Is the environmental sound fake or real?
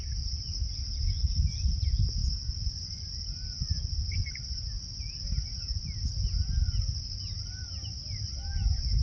real